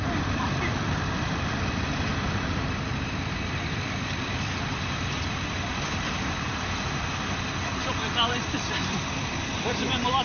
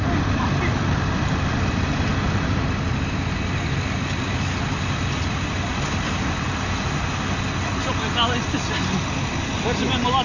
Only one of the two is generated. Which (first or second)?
first